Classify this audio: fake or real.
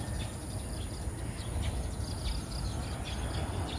real